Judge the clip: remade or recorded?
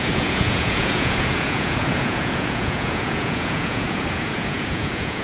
remade